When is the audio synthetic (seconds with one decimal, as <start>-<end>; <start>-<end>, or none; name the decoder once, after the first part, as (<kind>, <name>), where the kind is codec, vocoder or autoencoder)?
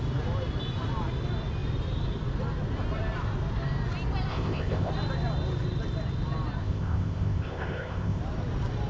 4.3-4.9 (codec, ZipCodec); 6.6-8.2